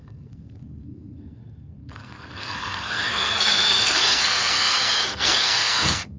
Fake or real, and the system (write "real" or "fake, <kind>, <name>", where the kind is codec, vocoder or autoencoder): fake, codec, SNAC